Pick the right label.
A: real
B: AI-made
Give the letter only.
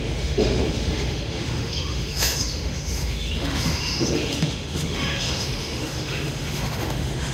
B